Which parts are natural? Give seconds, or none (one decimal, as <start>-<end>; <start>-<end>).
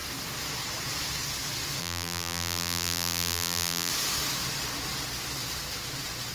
0.0-1.8; 3.9-6.3